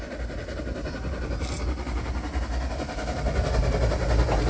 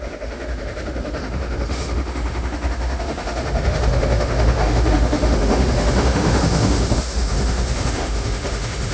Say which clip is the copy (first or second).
second